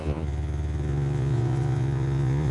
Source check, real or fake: fake